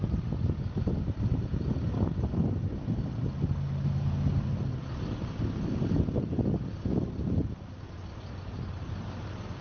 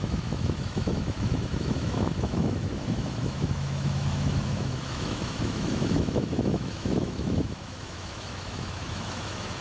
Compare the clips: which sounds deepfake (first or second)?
second